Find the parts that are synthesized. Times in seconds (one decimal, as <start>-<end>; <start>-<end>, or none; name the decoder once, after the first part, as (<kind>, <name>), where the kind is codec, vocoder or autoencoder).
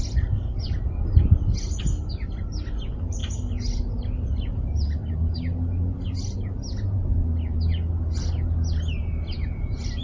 none